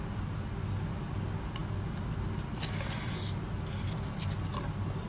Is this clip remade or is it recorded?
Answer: recorded